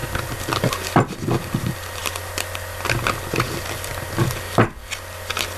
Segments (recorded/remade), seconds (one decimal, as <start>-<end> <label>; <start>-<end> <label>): 0.0-5.6 recorded